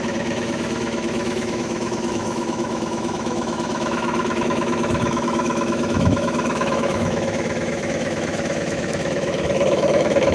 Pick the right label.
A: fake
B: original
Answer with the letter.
A